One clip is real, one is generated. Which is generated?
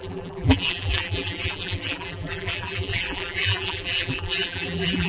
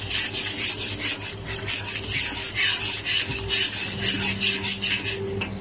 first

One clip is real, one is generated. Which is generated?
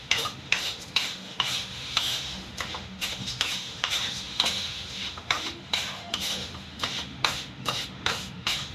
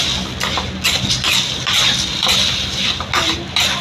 first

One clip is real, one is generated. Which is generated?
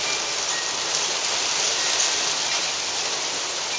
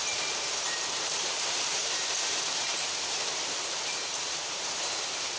second